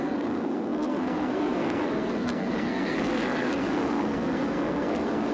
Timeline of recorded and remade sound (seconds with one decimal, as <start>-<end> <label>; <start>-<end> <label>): 0.0-5.3 remade